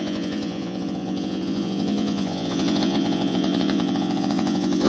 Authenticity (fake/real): fake